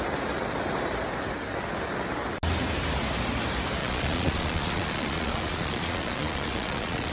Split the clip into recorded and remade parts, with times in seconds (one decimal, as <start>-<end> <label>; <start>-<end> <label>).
0.0-3.8 recorded; 3.8-7.1 remade